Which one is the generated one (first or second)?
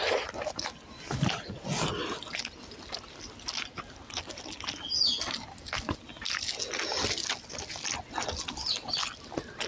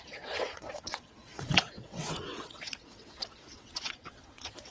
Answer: second